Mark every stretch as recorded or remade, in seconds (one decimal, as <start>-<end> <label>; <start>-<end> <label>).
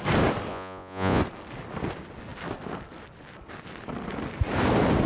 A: 0.0-0.5 recorded; 0.5-1.2 remade; 1.2-5.1 recorded